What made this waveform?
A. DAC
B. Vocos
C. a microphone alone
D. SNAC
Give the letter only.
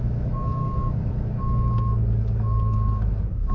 A